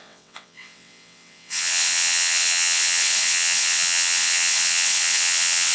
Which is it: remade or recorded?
remade